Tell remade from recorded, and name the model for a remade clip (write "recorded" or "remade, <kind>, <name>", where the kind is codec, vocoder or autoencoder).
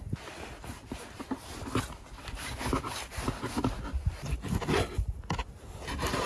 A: recorded